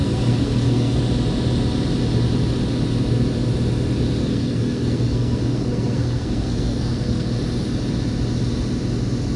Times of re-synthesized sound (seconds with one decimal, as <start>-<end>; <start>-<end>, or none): 0.0-1.0; 4.2-7.3